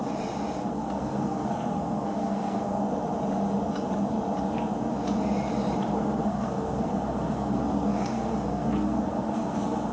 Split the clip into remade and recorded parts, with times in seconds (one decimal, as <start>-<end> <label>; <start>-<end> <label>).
0.0-0.6 recorded; 0.6-2.8 remade; 2.8-5.8 recorded; 5.8-9.9 remade